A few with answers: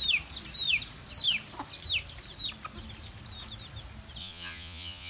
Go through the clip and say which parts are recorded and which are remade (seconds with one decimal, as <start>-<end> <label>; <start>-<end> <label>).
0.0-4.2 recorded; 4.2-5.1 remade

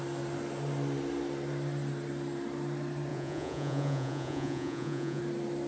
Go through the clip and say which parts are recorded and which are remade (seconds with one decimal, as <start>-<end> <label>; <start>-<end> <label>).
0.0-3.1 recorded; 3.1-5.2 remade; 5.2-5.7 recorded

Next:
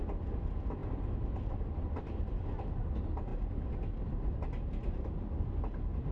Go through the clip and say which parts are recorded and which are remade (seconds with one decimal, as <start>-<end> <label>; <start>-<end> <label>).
0.0-6.1 recorded

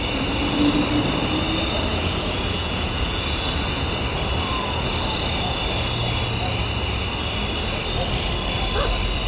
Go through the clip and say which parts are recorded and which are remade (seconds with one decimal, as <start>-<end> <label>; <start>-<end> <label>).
0.0-1.9 recorded; 1.9-3.9 remade; 3.9-9.3 recorded

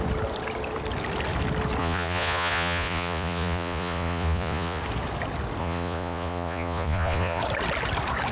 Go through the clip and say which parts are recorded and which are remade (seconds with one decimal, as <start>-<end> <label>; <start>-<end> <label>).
0.0-1.8 recorded; 1.8-4.8 remade; 4.8-5.6 recorded; 5.6-7.4 remade; 7.4-8.3 recorded

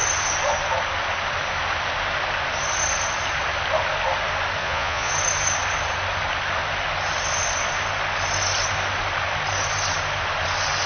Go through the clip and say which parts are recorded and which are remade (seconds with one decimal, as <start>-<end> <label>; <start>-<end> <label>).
0.0-4.6 recorded; 4.6-5.1 remade; 5.1-10.9 recorded